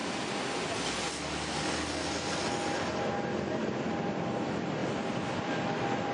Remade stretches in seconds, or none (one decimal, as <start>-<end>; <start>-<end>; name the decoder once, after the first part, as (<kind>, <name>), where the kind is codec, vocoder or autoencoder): 3.6-6.1 (vocoder, BigVGAN v2)